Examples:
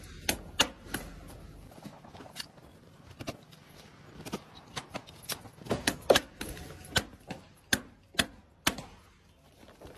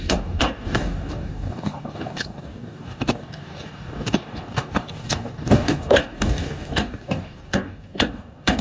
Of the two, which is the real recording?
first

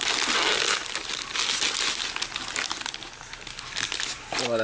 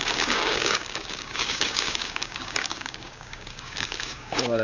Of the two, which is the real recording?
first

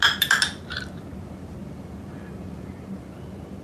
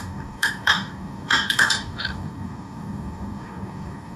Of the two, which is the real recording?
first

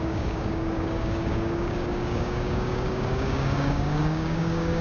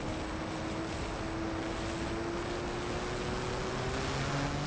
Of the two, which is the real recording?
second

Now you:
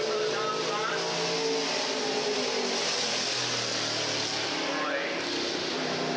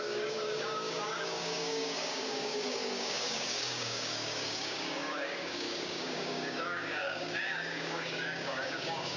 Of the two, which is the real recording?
first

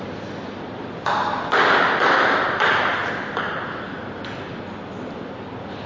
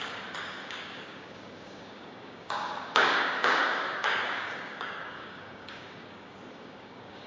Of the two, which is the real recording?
first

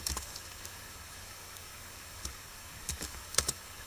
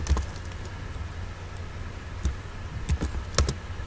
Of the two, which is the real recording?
second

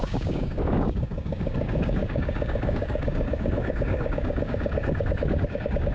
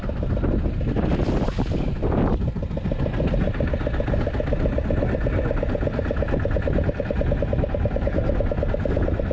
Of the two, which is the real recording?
second